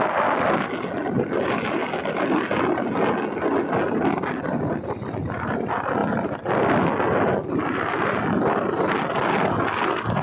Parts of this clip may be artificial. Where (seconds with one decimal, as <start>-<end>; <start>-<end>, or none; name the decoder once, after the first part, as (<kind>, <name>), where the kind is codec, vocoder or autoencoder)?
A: none